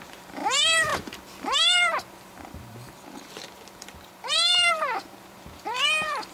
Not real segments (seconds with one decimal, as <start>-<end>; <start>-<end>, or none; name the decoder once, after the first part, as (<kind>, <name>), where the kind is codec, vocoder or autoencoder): 0.0-6.3 (vocoder, BigVGAN v2)